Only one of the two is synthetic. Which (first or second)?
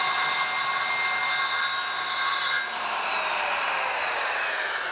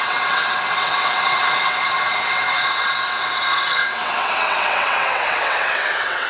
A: second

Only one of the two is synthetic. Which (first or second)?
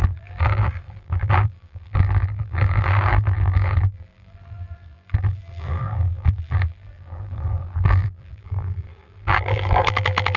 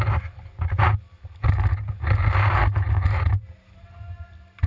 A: first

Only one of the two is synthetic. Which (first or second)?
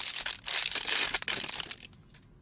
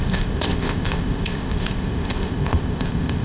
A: second